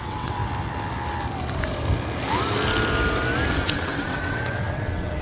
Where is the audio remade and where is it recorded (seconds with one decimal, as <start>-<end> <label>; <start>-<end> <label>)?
0.0-0.4 remade; 0.4-3.5 recorded; 3.5-5.2 remade